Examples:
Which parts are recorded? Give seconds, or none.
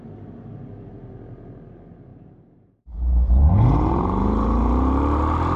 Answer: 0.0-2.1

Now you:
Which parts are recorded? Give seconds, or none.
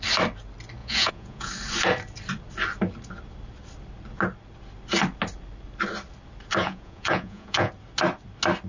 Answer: 0.0-0.8; 1.5-6.6; 7.7-8.7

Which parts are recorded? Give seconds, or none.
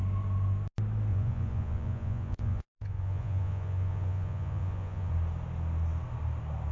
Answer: 0.0-1.1; 5.1-6.7